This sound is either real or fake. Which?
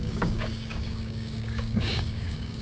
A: fake